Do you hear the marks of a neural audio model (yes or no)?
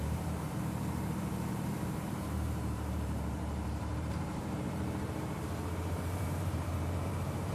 yes